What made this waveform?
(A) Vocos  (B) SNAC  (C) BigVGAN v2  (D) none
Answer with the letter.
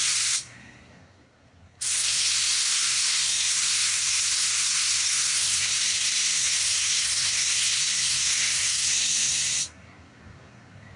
B